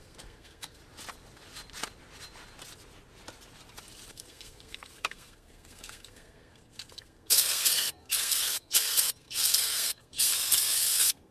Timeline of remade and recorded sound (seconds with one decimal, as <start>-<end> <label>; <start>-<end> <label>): 0.0-0.8 remade; 0.8-4.1 recorded; 4.1-11.3 remade